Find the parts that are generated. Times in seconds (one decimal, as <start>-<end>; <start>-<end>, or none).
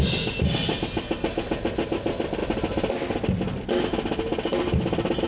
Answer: none